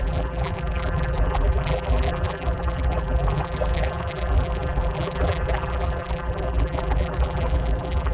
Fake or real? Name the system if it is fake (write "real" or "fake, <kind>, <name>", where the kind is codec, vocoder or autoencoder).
fake, vocoder, BigVGAN v2